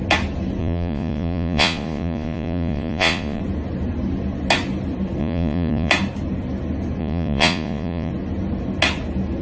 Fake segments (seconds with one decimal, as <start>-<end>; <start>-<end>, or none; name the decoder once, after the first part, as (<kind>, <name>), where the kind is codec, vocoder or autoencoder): 0.6-3.4 (vocoder, Vocos); 5.2-5.9; 7.0-8.1